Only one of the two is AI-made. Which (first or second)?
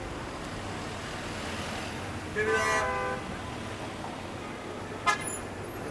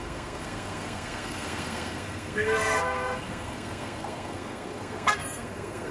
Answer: second